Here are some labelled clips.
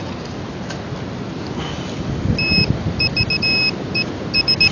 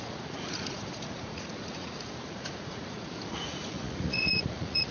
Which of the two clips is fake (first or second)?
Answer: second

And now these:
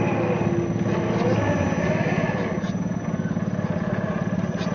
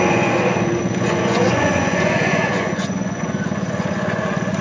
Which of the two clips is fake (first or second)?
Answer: second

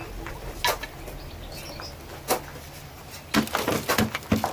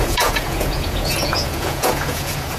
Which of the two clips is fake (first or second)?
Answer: second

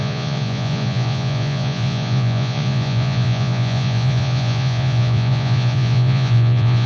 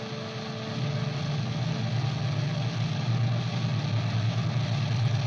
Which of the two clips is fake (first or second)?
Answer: first